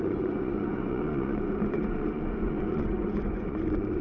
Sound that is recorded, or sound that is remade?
remade